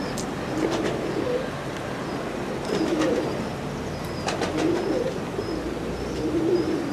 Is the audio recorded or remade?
recorded